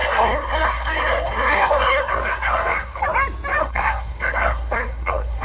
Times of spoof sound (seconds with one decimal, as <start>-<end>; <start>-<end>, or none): 0.0-3.0; 3.6-5.4

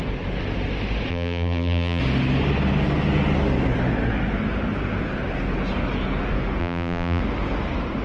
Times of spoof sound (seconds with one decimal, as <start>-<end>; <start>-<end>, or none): 1.1-2.0; 6.6-7.2